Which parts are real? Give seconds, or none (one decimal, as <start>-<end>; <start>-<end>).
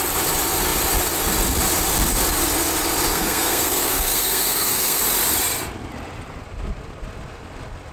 0.0-3.1; 5.0-7.9